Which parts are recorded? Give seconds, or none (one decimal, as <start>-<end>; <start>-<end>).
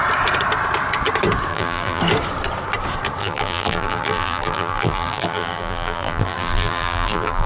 0.0-1.5; 2.0-3.2